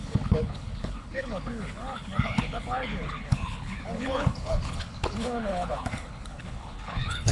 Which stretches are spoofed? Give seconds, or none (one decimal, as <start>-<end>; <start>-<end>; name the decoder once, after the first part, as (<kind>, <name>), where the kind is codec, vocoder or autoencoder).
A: 0.0-7.3 (codec, HILCodec)